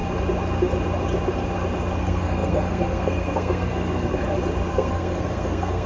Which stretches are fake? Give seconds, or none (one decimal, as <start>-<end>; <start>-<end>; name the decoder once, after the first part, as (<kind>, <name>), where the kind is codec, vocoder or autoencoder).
2.0-4.2 (codec, SNAC); 4.7-5.9